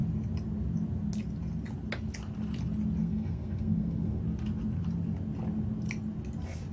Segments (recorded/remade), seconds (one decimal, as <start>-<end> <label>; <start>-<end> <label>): 0.0-3.0 recorded; 3.0-4.2 remade; 4.2-6.7 recorded